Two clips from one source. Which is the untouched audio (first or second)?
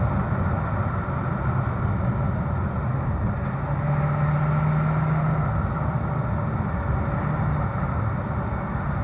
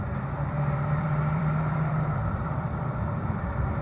first